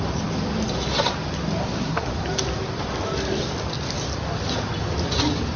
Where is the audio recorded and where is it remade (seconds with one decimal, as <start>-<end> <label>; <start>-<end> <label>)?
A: 0.0-1.6 recorded; 1.6-2.1 remade; 2.1-5.6 recorded